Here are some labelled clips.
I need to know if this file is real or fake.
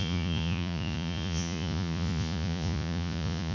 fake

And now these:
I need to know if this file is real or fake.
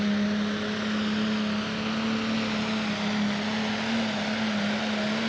real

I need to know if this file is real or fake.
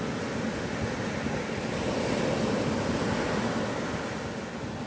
real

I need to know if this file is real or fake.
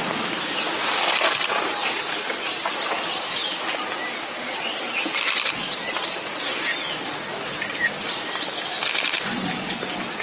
fake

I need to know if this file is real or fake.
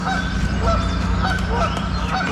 real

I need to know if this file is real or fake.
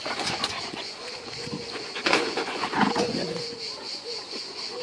fake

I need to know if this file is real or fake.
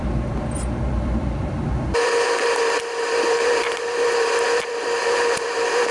fake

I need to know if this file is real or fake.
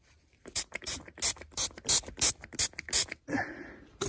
real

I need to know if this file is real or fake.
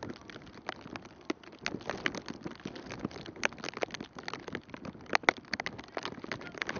real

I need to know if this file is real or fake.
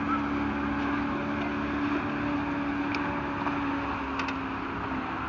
real